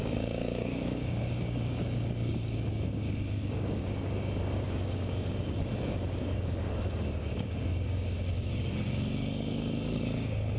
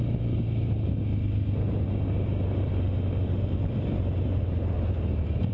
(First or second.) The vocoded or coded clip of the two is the first